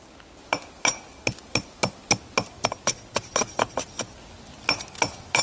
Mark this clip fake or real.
real